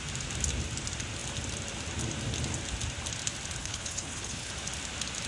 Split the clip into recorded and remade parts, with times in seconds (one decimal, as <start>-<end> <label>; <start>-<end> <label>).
0.0-3.6 recorded; 3.6-4.5 remade; 4.5-5.3 recorded